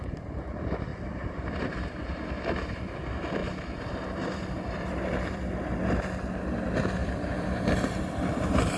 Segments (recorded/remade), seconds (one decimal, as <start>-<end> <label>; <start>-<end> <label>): 0.0-0.9 recorded; 0.9-1.9 remade; 1.9-3.4 recorded; 3.4-5.8 remade; 5.8-7.0 recorded; 7.0-8.0 remade; 8.0-8.8 recorded